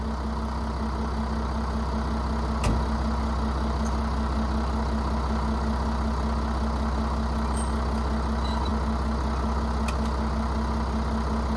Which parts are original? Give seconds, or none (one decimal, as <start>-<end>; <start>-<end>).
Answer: 0.0-11.6